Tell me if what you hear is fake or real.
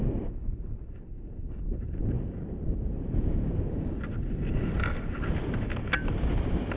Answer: real